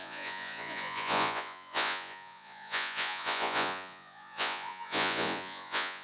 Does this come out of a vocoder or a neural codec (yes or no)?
yes